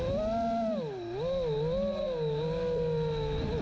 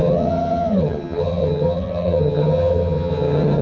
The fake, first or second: second